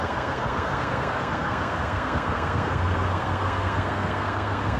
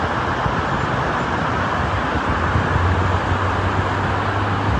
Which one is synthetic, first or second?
first